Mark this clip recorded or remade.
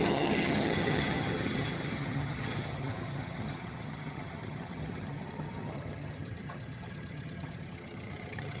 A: remade